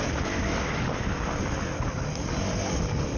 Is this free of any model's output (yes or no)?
yes